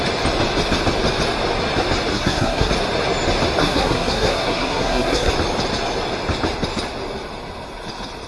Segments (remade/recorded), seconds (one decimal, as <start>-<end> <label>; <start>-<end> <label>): 0.0-2.1 recorded; 2.1-2.7 remade; 2.7-3.6 recorded; 3.6-5.3 remade; 5.3-8.3 recorded